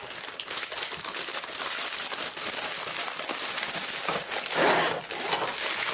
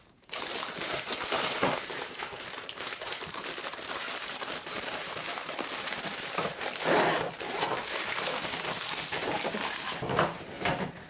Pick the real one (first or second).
first